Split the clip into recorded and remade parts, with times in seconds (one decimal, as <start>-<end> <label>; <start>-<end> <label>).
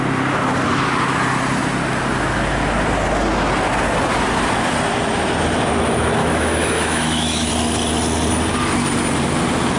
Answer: 0.0-6.2 recorded; 6.2-7.5 remade; 7.5-9.8 recorded